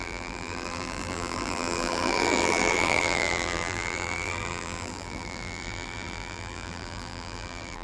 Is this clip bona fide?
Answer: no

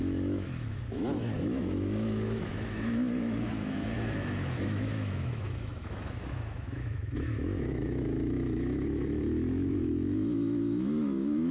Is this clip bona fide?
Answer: no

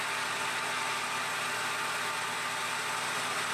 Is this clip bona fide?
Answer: yes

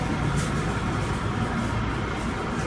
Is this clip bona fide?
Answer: yes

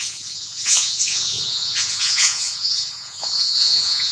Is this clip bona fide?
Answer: no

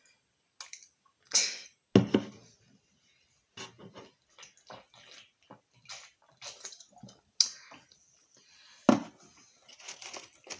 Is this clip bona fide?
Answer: yes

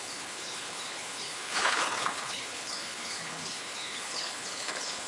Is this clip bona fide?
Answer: no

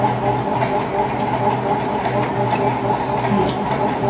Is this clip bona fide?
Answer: yes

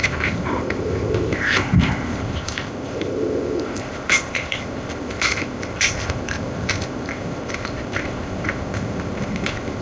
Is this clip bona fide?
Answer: no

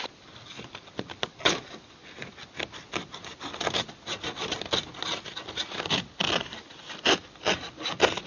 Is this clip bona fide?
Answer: yes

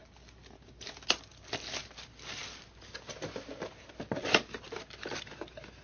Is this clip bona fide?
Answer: yes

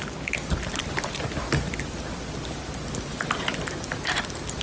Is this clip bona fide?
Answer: yes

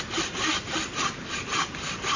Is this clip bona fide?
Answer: yes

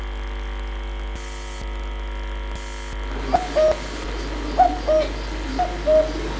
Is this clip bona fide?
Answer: yes